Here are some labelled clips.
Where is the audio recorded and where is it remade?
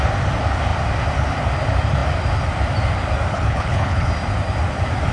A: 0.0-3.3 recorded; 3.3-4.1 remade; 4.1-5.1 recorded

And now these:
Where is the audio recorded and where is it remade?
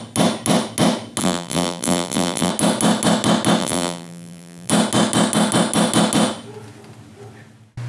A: 0.0-1.2 recorded; 1.2-2.5 remade; 2.5-3.6 recorded; 3.6-4.7 remade; 4.7-7.9 recorded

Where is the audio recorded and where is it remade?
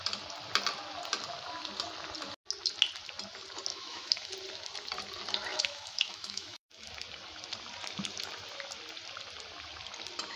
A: 0.0-3.7 recorded; 3.7-4.3 remade; 4.3-5.5 recorded; 5.5-6.9 remade; 6.9-10.4 recorded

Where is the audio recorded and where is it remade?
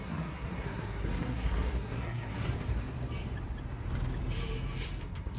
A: 0.0-2.4 remade; 2.4-5.0 recorded; 5.0-5.4 remade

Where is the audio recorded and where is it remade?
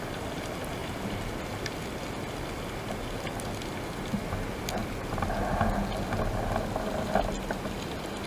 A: 0.0-8.3 recorded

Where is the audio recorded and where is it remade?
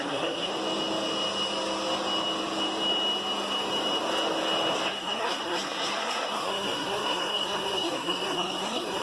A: 0.0-0.5 remade; 0.5-4.9 recorded; 4.9-9.0 remade